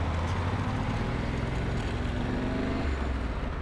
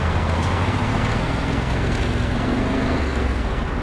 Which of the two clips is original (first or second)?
first